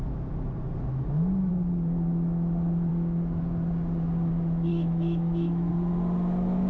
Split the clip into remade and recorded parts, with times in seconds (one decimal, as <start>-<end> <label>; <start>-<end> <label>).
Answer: 0.0-0.9 recorded; 0.9-1.5 remade; 1.5-4.7 recorded; 4.7-5.7 remade; 5.7-6.7 recorded